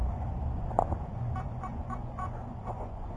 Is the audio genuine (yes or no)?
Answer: no